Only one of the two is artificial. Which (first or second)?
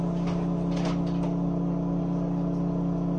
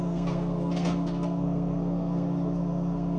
second